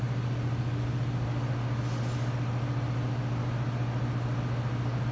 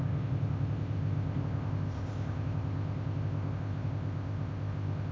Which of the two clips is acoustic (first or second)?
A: first